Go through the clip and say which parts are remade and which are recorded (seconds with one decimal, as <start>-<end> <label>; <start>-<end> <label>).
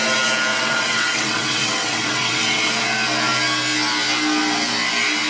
0.0-0.5 recorded; 0.5-2.7 remade; 2.7-5.3 recorded